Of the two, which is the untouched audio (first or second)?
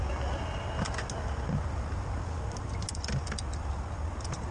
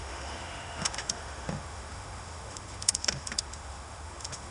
first